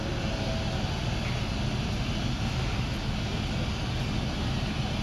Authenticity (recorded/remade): recorded